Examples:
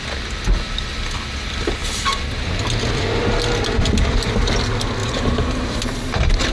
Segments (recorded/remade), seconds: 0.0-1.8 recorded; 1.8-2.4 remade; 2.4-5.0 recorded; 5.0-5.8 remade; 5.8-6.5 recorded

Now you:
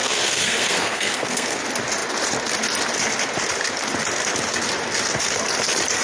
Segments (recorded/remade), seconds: 0.0-1.6 remade; 1.6-6.0 recorded

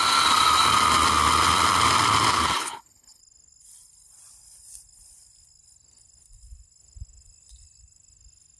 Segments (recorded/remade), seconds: 0.0-2.6 recorded; 2.6-3.2 remade; 3.2-8.6 recorded

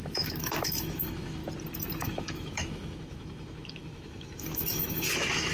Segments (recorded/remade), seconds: 0.0-1.4 remade; 1.4-2.0 recorded; 2.0-5.5 remade

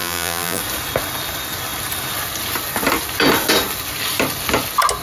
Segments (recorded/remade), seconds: 0.0-0.6 remade; 0.6-5.0 recorded

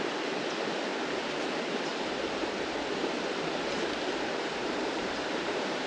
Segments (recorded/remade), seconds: 0.0-0.9 remade; 0.9-1.6 recorded; 1.6-5.9 remade

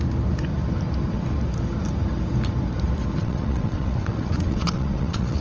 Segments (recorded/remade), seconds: 0.0-3.2 recorded; 3.2-5.4 remade